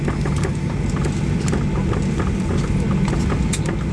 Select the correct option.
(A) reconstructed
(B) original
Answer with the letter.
B